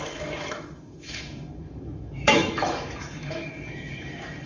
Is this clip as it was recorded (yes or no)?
no